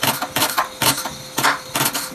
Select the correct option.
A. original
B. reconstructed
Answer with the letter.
A